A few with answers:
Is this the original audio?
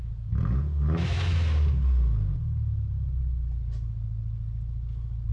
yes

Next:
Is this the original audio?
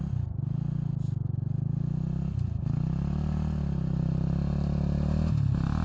yes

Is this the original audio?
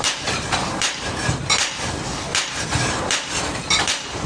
no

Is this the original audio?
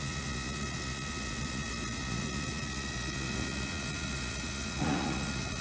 no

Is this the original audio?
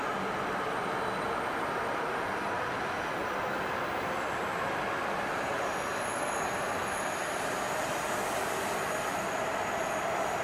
yes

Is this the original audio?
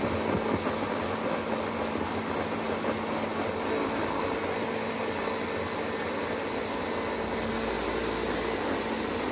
yes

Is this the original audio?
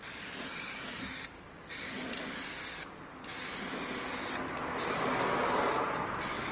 yes